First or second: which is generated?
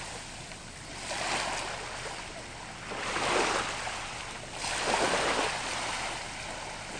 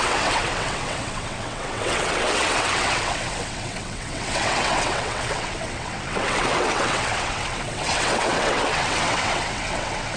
second